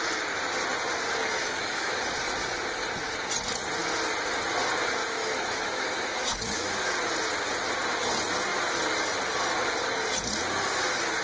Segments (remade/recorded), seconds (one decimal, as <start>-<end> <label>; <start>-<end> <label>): 0.0-1.4 recorded; 1.4-1.9 remade; 1.9-5.0 recorded; 5.0-6.9 remade; 6.9-11.2 recorded